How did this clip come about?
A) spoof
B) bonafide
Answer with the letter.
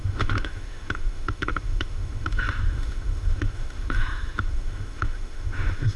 A